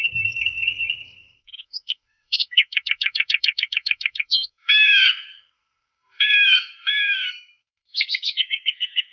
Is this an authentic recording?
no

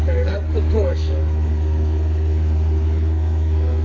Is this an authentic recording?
no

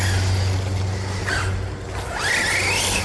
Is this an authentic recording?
yes